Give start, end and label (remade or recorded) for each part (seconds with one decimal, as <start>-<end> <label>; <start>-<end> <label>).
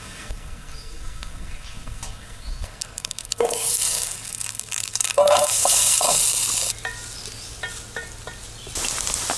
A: 0.0-6.2 remade; 6.2-9.4 recorded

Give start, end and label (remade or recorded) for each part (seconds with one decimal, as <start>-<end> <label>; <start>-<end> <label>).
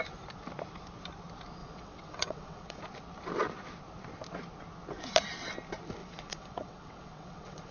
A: 0.0-1.6 recorded; 1.6-2.8 remade; 2.8-6.0 recorded; 6.0-7.7 remade